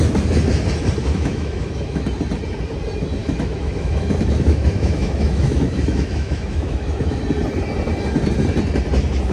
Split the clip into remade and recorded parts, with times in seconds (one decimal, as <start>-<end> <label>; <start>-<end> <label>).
0.0-1.0 recorded; 1.0-2.1 remade; 2.1-3.2 recorded; 3.2-7.2 remade; 7.2-9.3 recorded

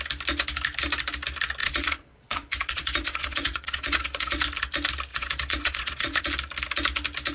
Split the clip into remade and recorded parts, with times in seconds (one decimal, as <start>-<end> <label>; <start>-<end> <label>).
0.0-1.6 recorded; 1.6-4.4 remade; 4.4-5.1 recorded; 5.1-6.2 remade; 6.2-7.3 recorded

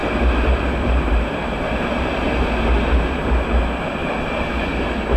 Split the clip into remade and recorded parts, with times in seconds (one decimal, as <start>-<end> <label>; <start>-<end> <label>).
0.0-1.7 remade; 1.7-4.0 recorded; 4.0-5.2 remade

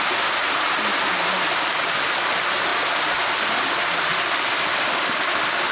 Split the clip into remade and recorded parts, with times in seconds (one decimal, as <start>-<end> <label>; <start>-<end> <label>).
0.0-5.7 recorded

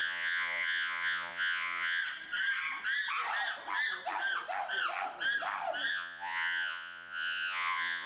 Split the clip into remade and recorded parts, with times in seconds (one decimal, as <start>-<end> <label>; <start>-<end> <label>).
0.0-2.0 remade; 2.0-5.9 recorded; 5.9-8.1 remade

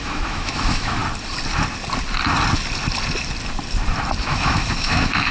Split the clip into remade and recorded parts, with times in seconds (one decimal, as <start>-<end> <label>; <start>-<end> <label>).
0.0-1.0 remade; 1.0-4.2 recorded; 4.2-5.3 remade

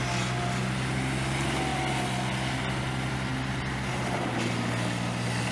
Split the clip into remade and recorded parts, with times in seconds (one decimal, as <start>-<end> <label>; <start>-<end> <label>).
0.0-5.5 recorded

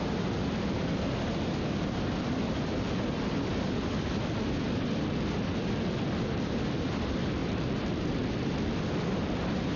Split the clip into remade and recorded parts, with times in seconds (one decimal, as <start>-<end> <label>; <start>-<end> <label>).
0.0-7.4 recorded; 7.4-8.1 remade; 8.1-9.8 recorded